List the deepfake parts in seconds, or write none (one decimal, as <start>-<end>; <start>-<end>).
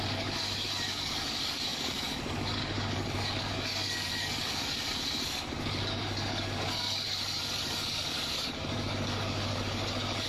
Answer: 0.0-10.3